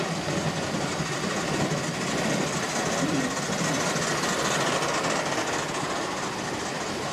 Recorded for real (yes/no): yes